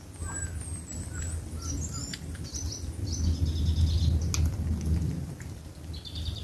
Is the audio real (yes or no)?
yes